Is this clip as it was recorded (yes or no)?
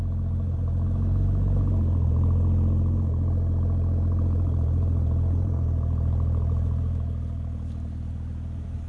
no